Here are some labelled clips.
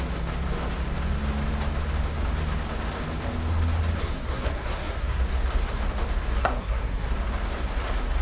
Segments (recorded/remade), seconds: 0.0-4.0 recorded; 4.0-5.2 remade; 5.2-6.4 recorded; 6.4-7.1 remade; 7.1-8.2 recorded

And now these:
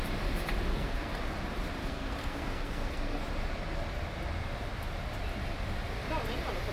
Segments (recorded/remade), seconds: 0.0-0.7 recorded; 0.7-1.4 remade; 1.4-1.8 recorded; 1.8-3.2 remade; 3.2-6.7 recorded